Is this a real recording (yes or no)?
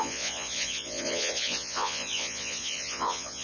no